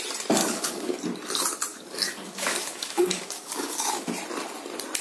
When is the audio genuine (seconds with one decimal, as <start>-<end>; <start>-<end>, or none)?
0.0-0.4; 1.0-1.7; 4.1-5.0